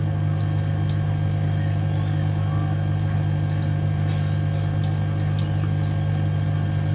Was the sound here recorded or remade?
recorded